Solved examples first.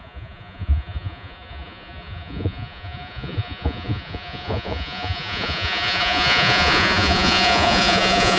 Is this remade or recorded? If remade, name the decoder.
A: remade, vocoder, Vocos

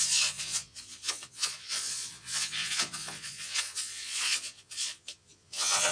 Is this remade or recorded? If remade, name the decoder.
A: remade, vocoder, Vocos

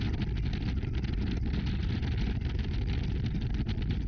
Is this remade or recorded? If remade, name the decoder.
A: recorded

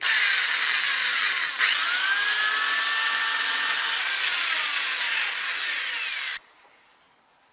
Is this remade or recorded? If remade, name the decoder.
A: recorded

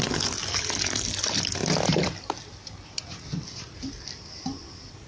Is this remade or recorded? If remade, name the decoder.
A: recorded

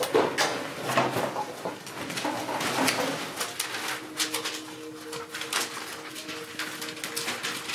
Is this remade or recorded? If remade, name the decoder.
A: recorded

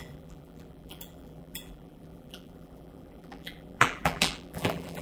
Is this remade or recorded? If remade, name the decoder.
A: remade, vocoder, BigVGAN v2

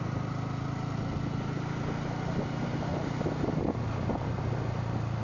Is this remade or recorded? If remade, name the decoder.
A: recorded